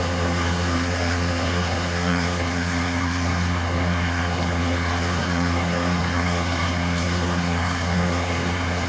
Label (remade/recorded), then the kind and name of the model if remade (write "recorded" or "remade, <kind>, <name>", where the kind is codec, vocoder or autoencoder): remade, codec, SNAC